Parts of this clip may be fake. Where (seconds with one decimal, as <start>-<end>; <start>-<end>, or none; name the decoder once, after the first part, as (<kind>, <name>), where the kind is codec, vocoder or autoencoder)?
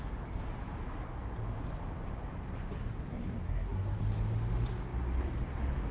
3.1-4.0 (codec, SNAC)